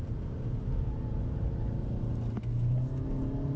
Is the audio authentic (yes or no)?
yes